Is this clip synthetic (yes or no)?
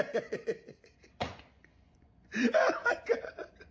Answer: yes